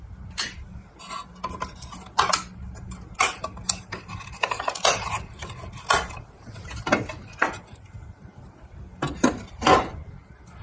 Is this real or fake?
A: real